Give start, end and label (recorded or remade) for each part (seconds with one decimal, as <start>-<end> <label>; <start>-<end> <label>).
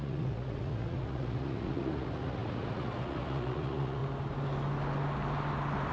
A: 0.0-4.0 remade; 4.0-5.9 recorded